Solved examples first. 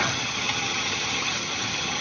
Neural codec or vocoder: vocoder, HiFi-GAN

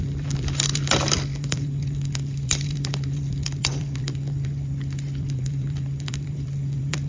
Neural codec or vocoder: vocoder, BigVGAN v2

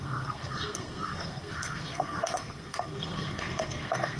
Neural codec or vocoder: codec, SNAC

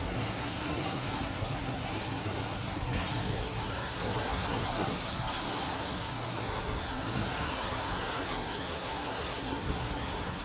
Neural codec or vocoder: codec, SNAC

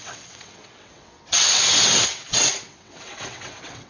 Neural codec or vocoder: vocoder, WaveNeXt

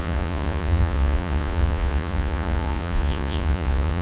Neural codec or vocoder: vocoder, Vocos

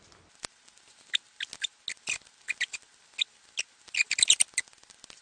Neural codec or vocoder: none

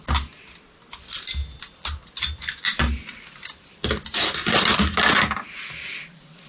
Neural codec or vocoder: none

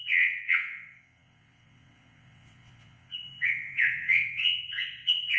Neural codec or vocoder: vocoder, WaveNeXt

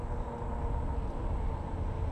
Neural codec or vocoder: none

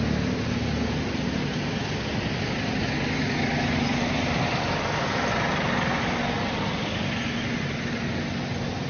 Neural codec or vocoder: none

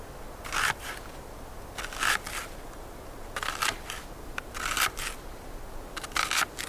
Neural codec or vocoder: none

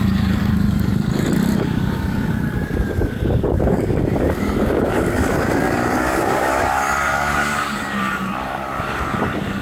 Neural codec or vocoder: codec, DAC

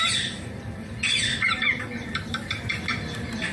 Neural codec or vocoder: none